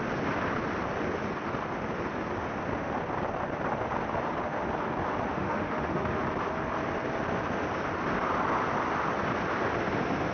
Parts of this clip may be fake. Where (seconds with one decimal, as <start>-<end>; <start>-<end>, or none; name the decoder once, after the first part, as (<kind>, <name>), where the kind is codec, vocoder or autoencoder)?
5.3-6.2 (autoencoder, DAC-VAE)